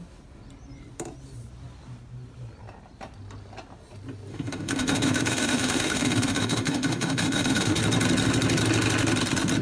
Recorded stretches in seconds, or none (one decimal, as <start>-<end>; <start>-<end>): 0.0-4.3; 7.8-9.6